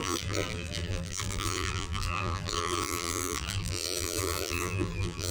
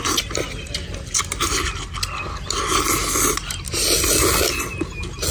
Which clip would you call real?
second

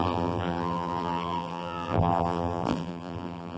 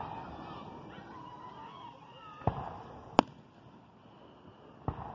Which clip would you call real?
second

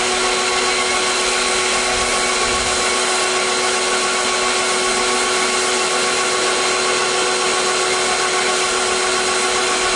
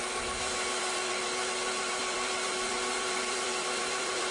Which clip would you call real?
first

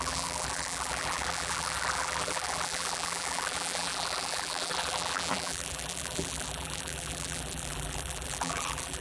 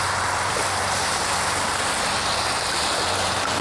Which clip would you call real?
second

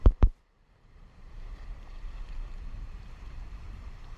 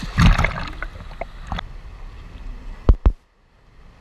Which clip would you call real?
second